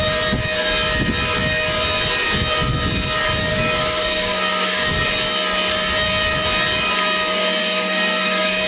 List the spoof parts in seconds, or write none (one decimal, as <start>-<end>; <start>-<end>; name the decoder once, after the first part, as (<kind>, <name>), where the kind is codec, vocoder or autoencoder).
3.5-5.0 (codec, DAC); 7.6-8.7